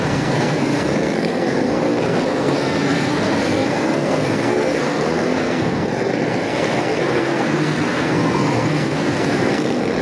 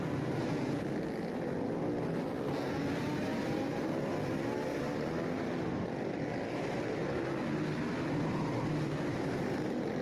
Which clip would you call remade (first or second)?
first